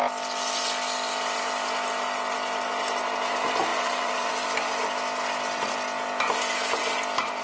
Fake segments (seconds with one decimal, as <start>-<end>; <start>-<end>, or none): 3.7-4.3